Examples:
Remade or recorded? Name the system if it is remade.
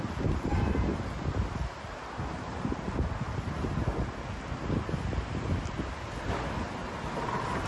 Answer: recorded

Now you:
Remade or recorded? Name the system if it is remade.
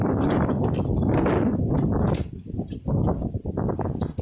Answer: recorded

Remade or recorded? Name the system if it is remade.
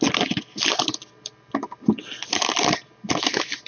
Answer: recorded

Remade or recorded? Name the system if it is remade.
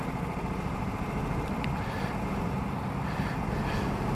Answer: recorded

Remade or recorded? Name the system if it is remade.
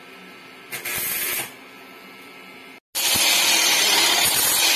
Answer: recorded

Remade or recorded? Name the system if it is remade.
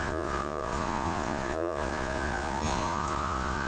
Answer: remade, vocoder, Vocos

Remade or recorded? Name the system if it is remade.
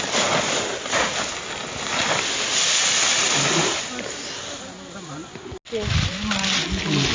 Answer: recorded